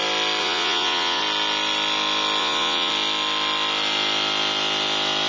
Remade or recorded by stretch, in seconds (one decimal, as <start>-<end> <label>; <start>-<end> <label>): 0.0-0.4 recorded; 0.4-1.2 remade; 1.2-2.4 recorded; 2.4-2.9 remade; 2.9-5.3 recorded